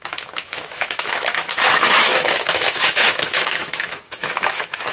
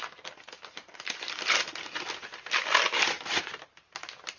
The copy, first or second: first